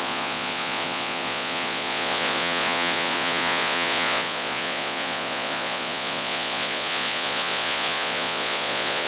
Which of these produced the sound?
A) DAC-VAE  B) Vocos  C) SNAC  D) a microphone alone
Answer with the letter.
B